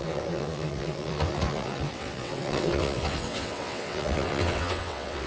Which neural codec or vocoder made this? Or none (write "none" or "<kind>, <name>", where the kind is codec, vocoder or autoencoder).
vocoder, WaveNeXt